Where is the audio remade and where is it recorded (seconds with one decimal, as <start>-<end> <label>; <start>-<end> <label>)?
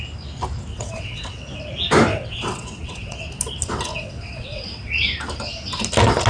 0.0-0.7 recorded; 0.7-1.4 remade; 1.4-2.1 recorded; 2.1-3.2 remade; 3.2-3.9 recorded; 3.9-4.9 remade; 4.9-6.3 recorded